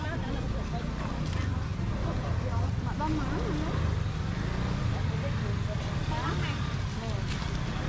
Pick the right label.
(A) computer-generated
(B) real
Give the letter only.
B